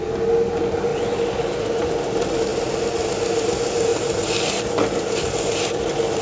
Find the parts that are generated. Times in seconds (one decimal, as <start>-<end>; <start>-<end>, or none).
0.9-1.4; 2.5-3.1; 3.9-4.6